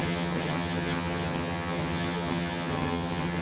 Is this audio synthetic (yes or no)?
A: yes